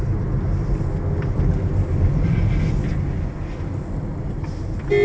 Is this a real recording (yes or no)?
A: yes